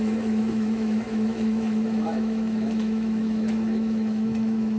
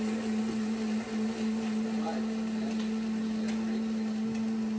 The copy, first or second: first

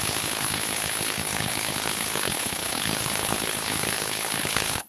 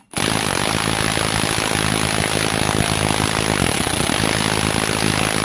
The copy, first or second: first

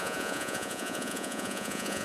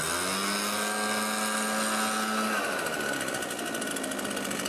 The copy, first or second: first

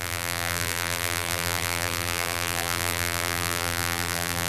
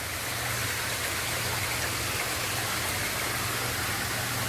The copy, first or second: first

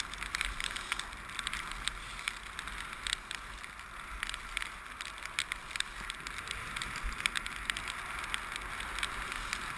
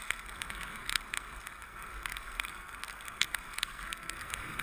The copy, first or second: second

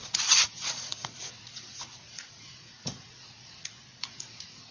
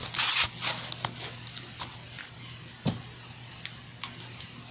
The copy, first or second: first